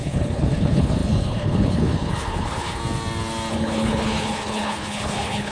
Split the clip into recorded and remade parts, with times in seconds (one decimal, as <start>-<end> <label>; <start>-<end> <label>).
0.0-2.8 remade; 2.8-3.5 recorded; 3.5-5.5 remade